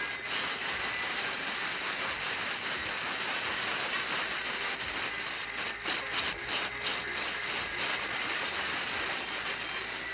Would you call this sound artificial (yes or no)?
no